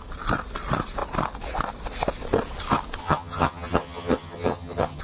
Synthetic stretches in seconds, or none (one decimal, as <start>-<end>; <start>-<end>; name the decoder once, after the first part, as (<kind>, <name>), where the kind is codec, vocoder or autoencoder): 3.0-5.0 (vocoder, HiFi-GAN)